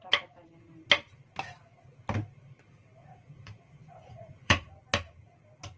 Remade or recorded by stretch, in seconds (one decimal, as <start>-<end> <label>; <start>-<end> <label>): 0.0-3.0 recorded; 3.0-4.7 remade; 4.7-5.8 recorded